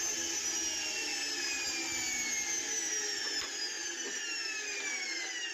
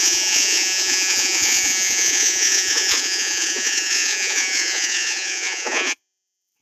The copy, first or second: second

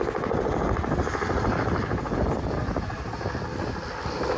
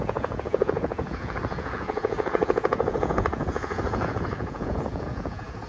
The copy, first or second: second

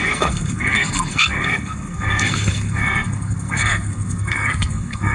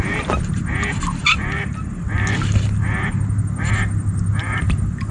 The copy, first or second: first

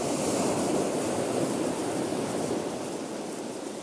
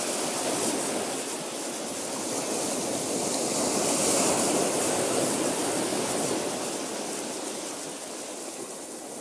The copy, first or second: first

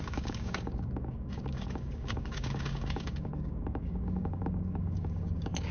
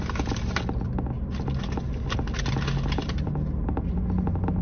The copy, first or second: first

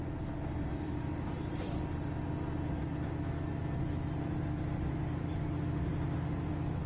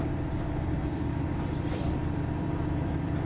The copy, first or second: second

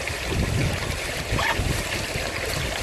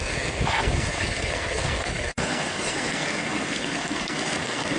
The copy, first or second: second